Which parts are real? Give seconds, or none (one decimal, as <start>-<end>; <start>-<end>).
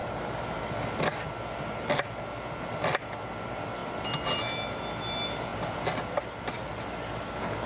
0.0-7.7